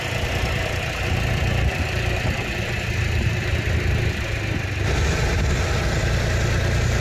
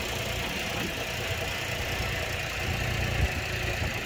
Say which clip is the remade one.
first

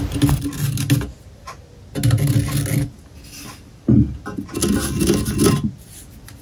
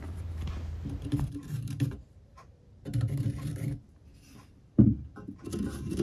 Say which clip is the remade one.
second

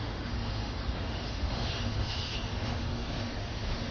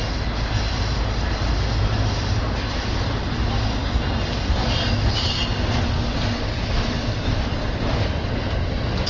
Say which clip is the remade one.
first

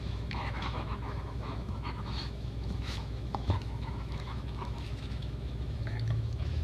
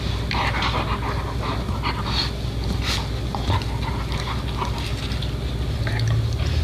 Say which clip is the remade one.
first